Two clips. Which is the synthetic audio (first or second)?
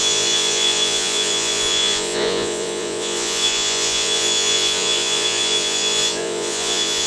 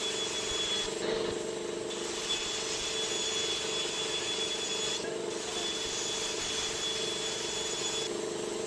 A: first